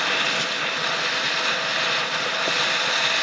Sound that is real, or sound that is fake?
real